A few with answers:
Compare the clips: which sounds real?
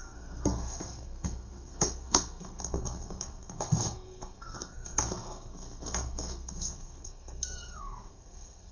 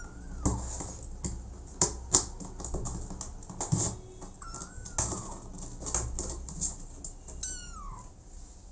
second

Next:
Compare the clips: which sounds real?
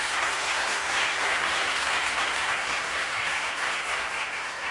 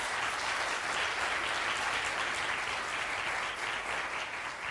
second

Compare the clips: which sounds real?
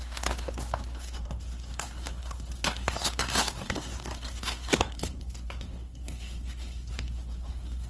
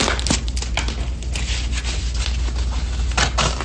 second